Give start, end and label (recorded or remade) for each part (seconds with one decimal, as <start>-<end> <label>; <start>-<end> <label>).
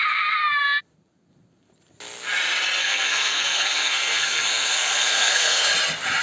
0.0-2.8 recorded; 2.8-5.7 remade; 5.7-6.2 recorded